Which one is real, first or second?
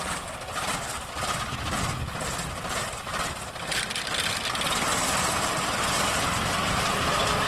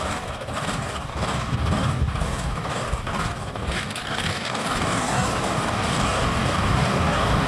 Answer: first